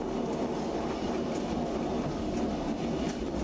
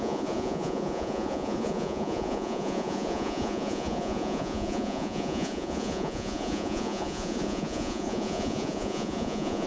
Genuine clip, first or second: first